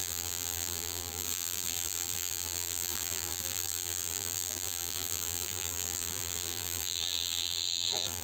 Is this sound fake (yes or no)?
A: yes